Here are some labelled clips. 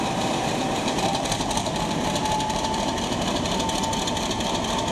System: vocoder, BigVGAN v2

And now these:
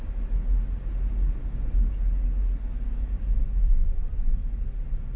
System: none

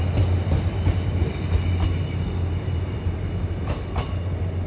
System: none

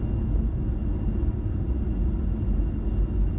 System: none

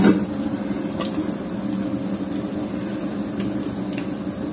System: none